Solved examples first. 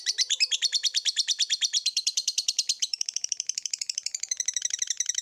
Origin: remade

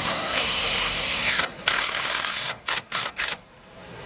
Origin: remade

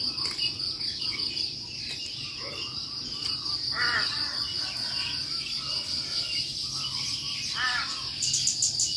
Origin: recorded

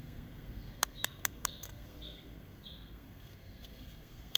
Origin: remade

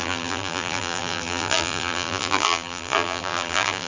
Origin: remade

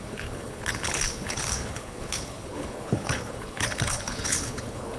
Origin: remade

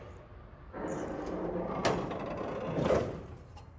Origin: recorded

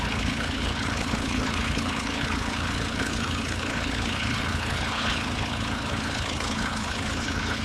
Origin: remade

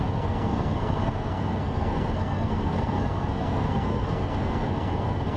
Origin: remade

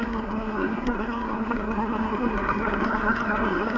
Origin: remade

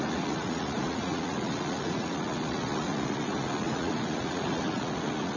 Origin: remade